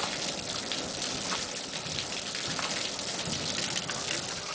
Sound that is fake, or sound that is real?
real